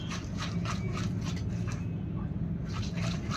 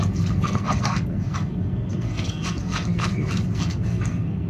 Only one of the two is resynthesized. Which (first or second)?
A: second